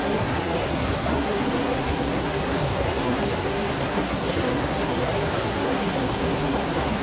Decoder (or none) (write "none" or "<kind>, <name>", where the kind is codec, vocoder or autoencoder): codec, SNAC